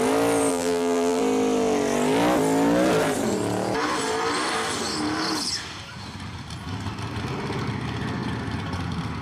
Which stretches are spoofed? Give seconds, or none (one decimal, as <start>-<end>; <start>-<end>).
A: 0.5-1.2